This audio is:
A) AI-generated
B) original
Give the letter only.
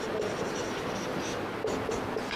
B